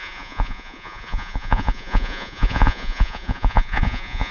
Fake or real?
fake